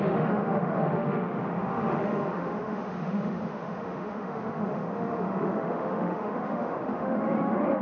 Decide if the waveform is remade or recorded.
remade